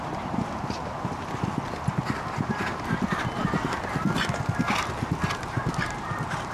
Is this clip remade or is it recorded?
recorded